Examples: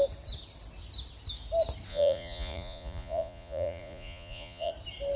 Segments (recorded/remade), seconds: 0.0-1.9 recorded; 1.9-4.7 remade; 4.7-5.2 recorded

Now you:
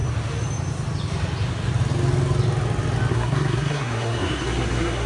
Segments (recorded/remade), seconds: 0.0-3.1 recorded; 3.1-5.1 remade

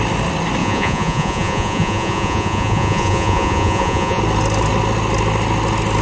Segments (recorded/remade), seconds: 0.0-0.6 recorded; 0.6-4.2 remade; 4.2-6.0 recorded

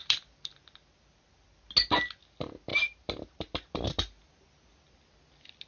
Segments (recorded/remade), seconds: 0.0-0.5 remade; 0.5-2.7 recorded; 2.7-4.3 remade; 4.3-5.7 recorded

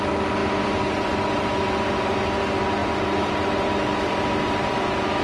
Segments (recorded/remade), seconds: 0.0-5.2 recorded

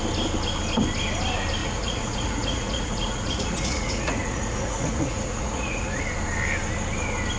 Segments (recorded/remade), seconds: 0.0-1.6 recorded; 1.6-6.0 remade; 6.0-7.4 recorded